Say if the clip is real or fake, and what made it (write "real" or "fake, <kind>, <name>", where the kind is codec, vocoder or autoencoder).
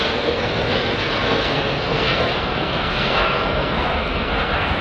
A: fake, codec, SNAC